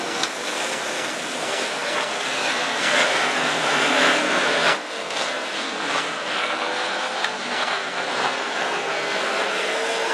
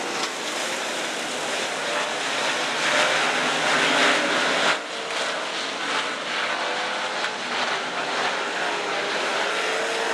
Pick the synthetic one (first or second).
first